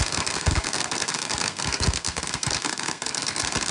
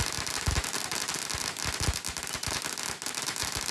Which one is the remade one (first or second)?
first